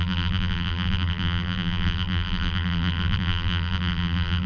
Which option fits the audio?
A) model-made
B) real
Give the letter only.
A